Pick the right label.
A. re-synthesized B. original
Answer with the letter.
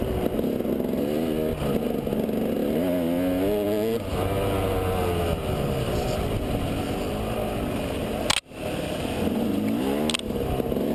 B